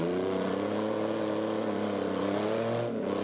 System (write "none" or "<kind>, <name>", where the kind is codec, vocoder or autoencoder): vocoder, Vocos